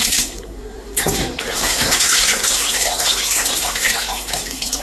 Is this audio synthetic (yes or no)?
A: yes